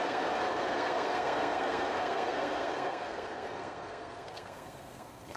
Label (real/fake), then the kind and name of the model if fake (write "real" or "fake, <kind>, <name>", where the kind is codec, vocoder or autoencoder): fake, codec, SNAC